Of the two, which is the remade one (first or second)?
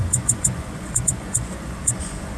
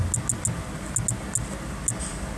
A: first